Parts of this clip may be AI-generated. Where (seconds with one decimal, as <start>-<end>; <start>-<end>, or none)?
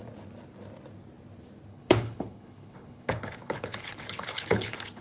1.7-5.0